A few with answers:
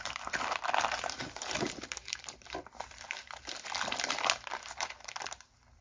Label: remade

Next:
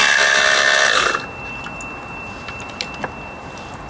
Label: recorded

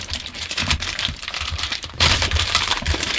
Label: remade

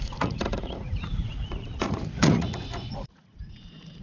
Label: remade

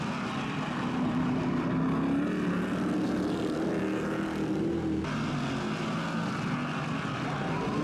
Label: recorded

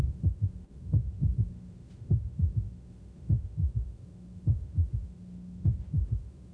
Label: remade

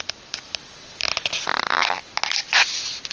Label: recorded